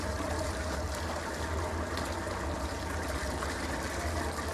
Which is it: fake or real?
real